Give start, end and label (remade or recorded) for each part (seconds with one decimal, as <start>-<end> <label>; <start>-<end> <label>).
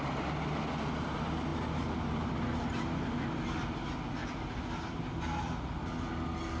0.0-6.6 recorded